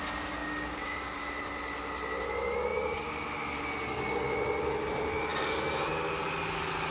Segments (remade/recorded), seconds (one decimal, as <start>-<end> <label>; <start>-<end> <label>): 0.0-0.4 recorded; 0.4-1.2 remade; 1.2-6.9 recorded